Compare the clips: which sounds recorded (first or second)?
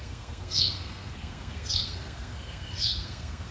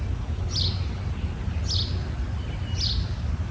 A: second